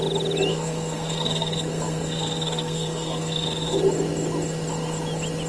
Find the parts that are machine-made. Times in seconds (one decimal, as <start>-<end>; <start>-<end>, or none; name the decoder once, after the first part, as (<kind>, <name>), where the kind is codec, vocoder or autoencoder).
0.5-3.8 (codec, SNAC)

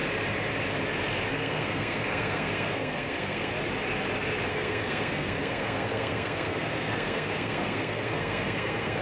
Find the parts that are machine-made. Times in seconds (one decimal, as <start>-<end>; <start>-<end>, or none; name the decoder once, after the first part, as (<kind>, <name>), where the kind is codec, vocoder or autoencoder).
1.3-3.5 (codec, SNAC); 4.5-9.0